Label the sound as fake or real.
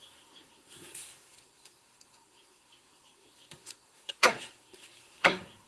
fake